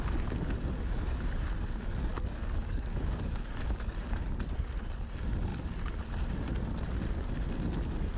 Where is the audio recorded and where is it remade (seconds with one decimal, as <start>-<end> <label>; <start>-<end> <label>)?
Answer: 0.0-2.1 recorded; 2.1-4.2 remade; 4.2-8.2 recorded